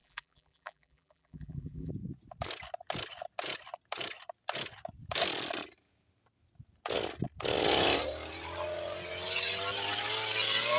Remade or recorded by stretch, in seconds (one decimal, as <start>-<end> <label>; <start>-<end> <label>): 0.0-1.9 remade; 1.9-10.8 recorded